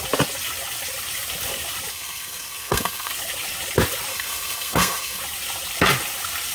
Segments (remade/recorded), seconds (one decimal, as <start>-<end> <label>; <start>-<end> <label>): 0.0-1.9 recorded; 1.9-3.1 remade; 3.1-4.1 recorded; 4.1-5.2 remade; 5.2-6.5 recorded